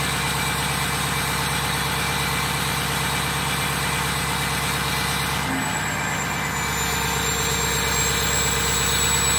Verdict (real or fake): real